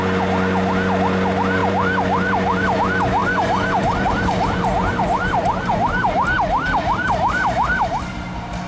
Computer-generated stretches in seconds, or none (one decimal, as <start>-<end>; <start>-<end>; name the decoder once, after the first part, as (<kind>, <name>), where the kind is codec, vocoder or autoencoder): 1.6-2.8 (vocoder, BigVGAN v2); 3.2-8.1